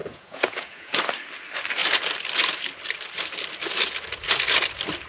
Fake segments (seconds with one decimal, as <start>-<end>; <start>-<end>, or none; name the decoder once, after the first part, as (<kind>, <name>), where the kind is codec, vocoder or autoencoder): 0.0-1.0 (vocoder, Vocos)